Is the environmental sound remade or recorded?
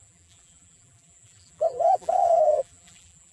remade